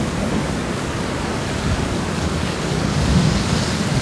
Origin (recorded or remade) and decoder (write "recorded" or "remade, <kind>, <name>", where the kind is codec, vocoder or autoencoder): remade, codec, DAC